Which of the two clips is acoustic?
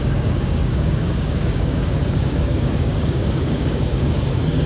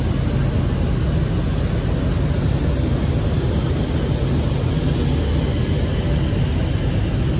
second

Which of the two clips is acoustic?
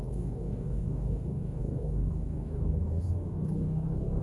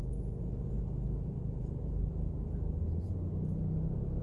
second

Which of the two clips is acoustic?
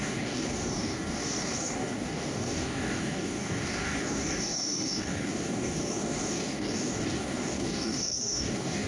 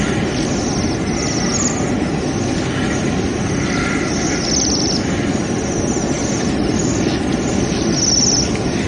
second